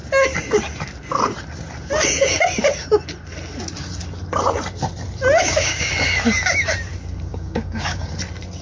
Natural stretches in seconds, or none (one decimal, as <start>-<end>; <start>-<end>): 0.0-5.4; 5.9-7.3; 8.1-8.6